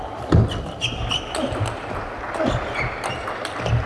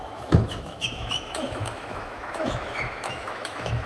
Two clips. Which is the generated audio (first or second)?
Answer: second